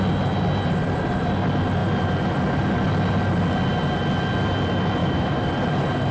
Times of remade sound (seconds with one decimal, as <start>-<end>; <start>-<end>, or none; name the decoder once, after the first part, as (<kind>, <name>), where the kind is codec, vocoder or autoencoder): 5.0-5.5 (autoencoder, DAC-VAE)